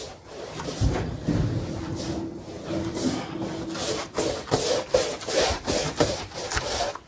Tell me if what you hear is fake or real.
real